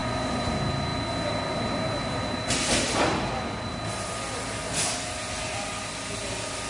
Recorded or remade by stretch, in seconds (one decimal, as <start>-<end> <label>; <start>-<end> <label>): 0.0-0.5 remade; 0.5-6.7 recorded